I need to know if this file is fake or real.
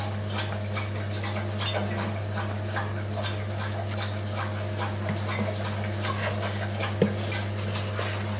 real